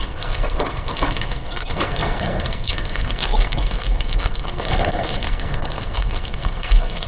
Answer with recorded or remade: remade